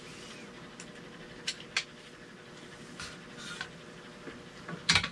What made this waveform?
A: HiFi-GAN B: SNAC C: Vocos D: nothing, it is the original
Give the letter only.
D